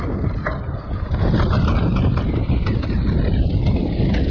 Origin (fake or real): real